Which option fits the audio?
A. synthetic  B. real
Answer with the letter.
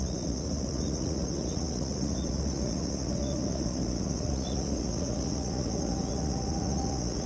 A